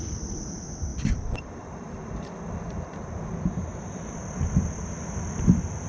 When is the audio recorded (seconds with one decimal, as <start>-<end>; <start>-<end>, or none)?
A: 0.0-0.9; 4.3-5.9